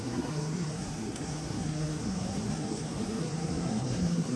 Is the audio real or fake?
fake